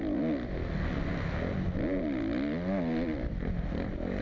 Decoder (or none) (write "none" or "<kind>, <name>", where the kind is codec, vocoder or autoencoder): none